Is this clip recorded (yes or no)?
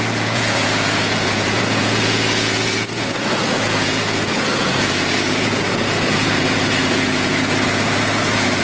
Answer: no